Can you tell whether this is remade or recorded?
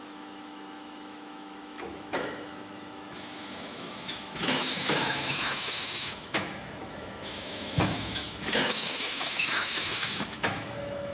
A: remade